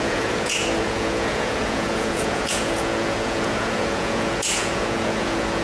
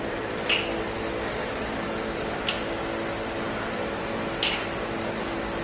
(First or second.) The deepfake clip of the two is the first